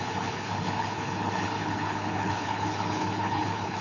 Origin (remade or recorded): remade